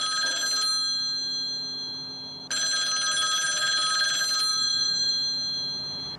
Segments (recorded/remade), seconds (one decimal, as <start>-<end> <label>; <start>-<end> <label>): 0.0-4.5 recorded; 4.5-5.1 remade; 5.1-6.2 recorded